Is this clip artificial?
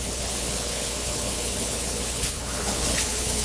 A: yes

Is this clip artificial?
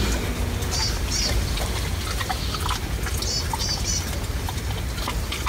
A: no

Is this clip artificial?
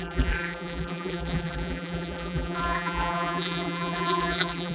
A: yes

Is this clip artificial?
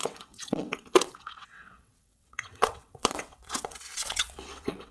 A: yes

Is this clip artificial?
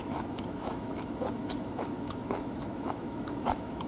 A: yes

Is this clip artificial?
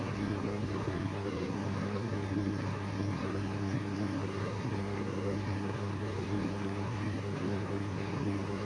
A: yes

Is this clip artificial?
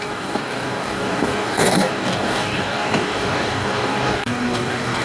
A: yes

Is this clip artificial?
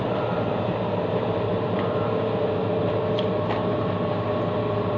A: yes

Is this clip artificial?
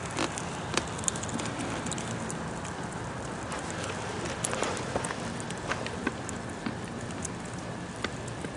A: no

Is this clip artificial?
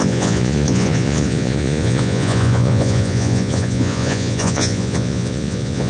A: yes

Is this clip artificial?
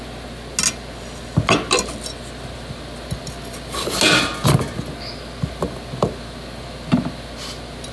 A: no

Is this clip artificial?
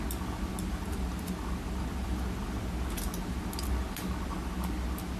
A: no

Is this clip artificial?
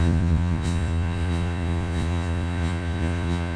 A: yes